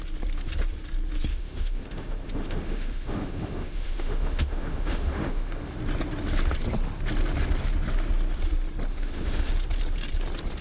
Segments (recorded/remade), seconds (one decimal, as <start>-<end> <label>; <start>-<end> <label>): 0.0-1.3 recorded; 1.3-5.8 remade; 5.8-8.9 recorded; 8.9-9.5 remade; 9.5-10.6 recorded